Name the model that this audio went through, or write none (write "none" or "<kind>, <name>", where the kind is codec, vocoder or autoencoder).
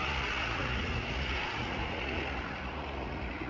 vocoder, Vocos